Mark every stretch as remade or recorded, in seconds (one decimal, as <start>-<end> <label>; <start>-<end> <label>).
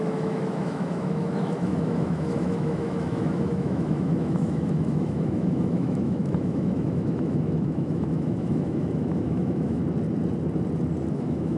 0.0-9.8 remade; 9.8-11.1 recorded; 11.1-11.6 remade